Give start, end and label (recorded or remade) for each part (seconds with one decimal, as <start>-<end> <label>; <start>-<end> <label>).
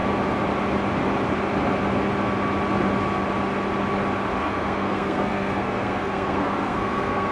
0.0-4.4 recorded; 4.4-7.3 remade